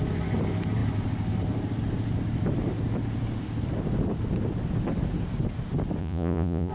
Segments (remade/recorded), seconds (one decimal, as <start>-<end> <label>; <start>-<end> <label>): 0.0-6.0 recorded; 6.0-6.7 remade